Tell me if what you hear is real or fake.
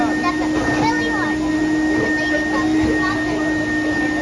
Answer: real